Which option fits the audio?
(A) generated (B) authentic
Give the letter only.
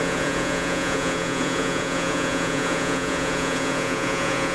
A